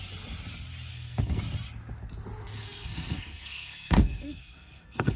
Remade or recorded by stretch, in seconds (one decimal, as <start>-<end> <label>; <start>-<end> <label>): 0.0-0.9 recorded; 0.9-1.4 remade; 1.4-2.6 recorded; 2.6-5.2 remade